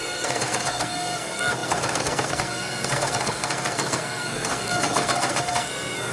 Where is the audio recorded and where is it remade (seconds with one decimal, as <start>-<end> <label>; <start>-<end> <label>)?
0.0-6.1 remade